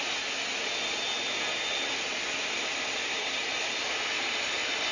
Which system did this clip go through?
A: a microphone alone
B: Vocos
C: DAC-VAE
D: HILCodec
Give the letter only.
A